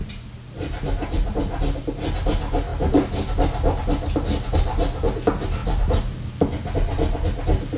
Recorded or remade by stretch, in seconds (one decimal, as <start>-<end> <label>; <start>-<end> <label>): 0.0-7.8 recorded